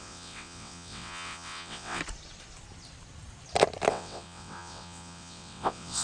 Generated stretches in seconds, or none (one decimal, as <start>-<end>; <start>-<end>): 0.0-2.0; 3.9-6.0

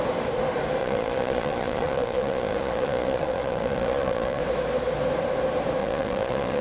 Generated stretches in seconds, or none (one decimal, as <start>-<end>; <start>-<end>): 0.8-4.4; 5.8-6.6